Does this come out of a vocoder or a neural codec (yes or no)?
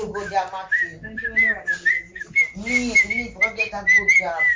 no